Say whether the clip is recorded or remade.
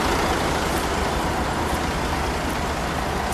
recorded